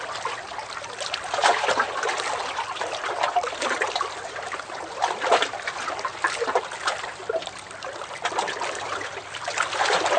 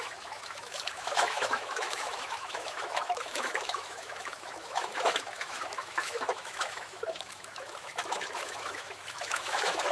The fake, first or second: second